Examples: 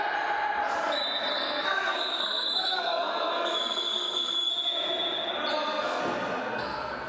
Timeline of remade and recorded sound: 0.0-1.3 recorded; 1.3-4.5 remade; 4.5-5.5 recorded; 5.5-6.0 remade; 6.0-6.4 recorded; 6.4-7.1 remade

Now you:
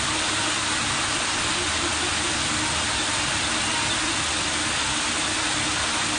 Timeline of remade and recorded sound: 0.0-6.2 recorded

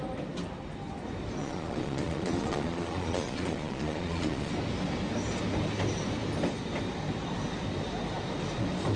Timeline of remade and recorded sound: 0.0-1.4 recorded; 1.4-4.5 remade; 4.5-9.0 recorded

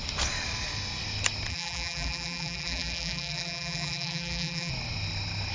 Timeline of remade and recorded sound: 0.0-1.5 recorded; 1.5-4.7 remade; 4.7-5.5 recorded